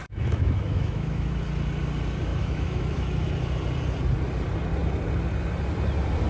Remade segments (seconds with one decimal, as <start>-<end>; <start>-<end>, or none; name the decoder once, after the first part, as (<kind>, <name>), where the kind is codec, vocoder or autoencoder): 0.0-1.3 (autoencoder, DAC-VAE); 2.3-3.3